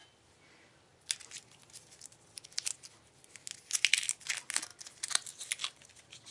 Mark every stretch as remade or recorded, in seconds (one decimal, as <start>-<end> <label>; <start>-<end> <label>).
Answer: 0.0-4.7 recorded; 4.7-6.3 remade